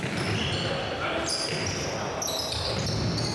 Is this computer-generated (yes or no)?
no